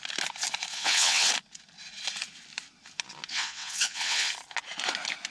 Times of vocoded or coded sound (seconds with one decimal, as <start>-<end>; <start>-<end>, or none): 0.7-1.3; 3.3-4.3